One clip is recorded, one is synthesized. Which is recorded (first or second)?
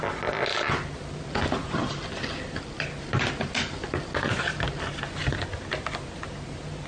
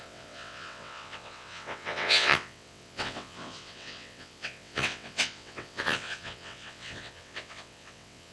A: first